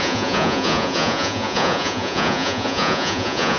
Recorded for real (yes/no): no